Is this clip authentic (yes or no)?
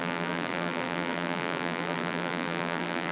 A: no